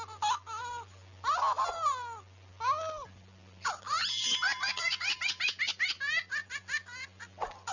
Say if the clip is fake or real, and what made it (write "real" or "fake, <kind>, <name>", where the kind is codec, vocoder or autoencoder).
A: real